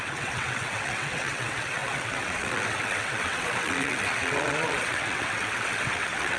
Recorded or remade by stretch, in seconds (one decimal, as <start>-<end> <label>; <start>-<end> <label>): 0.0-6.4 remade

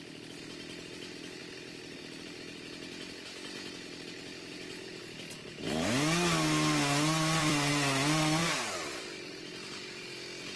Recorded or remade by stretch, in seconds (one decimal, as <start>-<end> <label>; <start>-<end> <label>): 0.0-1.4 recorded; 1.4-5.0 remade; 5.0-7.2 recorded; 7.2-7.7 remade; 7.7-8.4 recorded; 8.4-10.1 remade; 10.1-10.6 recorded

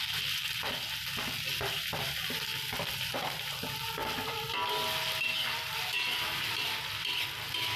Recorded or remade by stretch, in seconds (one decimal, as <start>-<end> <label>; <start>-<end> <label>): 0.0-4.0 recorded; 4.0-4.7 remade; 4.7-7.8 recorded

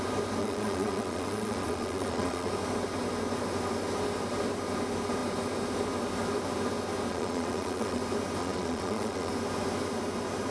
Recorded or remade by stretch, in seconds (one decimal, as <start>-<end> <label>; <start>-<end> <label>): 0.0-0.4 recorded; 0.4-2.5 remade; 2.5-7.1 recorded; 7.1-8.0 remade; 8.0-8.4 recorded; 8.4-9.3 remade; 9.3-10.5 recorded

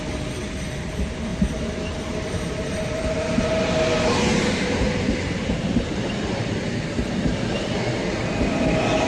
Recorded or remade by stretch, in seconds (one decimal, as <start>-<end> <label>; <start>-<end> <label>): 0.0-1.3 recorded; 1.3-6.1 remade; 6.1-9.1 recorded

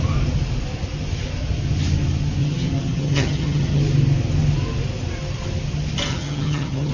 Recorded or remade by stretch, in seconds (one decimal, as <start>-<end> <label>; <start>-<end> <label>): 0.0-2.4 recorded; 2.4-3.8 remade; 3.8-6.1 recorded; 6.1-6.9 remade

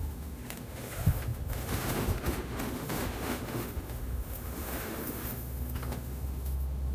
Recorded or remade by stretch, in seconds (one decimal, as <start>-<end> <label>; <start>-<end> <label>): 0.0-6.9 remade

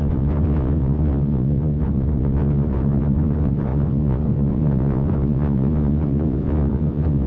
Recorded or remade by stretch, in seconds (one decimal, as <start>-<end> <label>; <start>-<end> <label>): 0.0-7.3 remade